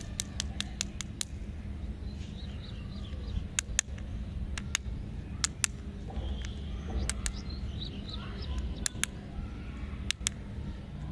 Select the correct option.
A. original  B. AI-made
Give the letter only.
A